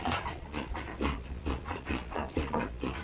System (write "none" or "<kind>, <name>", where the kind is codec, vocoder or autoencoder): vocoder, Vocos